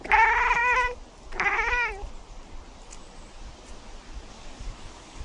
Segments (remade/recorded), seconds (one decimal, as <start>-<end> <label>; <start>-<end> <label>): 0.0-4.3 recorded; 4.3-5.2 remade